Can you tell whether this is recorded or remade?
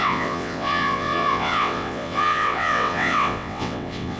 remade